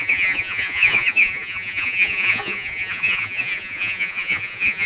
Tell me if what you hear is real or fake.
fake